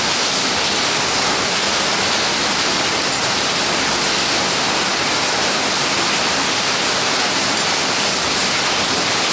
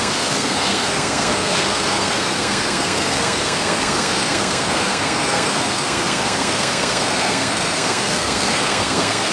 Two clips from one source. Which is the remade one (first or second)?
second